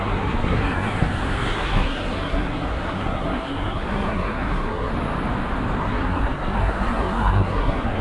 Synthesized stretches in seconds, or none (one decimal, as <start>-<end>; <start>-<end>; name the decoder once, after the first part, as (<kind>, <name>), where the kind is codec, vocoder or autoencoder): 0.0-4.9 (codec, SNAC); 5.8-8.0